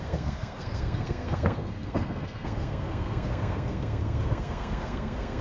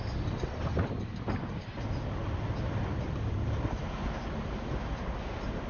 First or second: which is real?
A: second